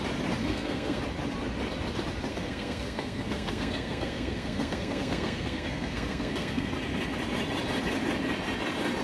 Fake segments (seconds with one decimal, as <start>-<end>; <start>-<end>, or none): 0.4-1.0; 2.3-6.7

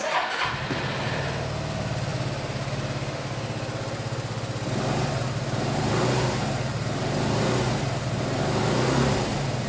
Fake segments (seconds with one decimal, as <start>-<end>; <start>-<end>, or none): none

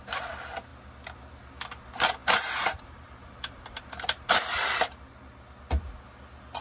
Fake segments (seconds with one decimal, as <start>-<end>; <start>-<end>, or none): 2.2-5.0

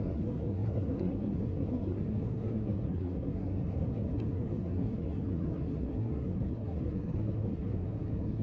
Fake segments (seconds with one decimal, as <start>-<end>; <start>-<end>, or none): 0.0-8.4

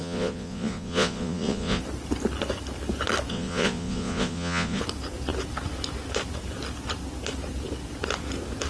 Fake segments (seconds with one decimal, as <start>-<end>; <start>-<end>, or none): 0.0-1.8; 3.3-4.8

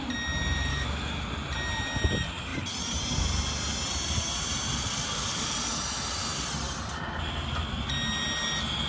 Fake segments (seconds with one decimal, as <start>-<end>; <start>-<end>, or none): 0.7-1.2

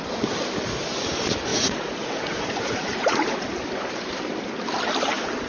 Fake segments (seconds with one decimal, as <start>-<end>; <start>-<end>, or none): 1.5-3.5